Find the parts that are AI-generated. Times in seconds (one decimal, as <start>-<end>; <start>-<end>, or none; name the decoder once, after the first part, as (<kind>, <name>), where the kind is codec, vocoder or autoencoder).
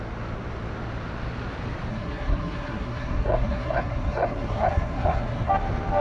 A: 1.9-5.5 (codec, SNAC)